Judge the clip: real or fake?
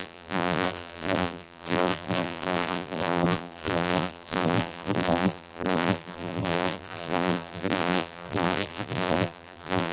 fake